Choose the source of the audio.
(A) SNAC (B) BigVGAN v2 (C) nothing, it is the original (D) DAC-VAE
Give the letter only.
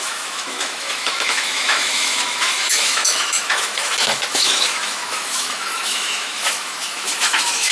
D